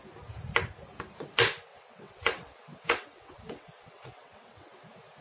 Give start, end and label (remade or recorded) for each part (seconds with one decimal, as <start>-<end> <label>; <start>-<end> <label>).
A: 0.0-1.7 recorded; 1.7-4.8 remade; 4.8-5.2 recorded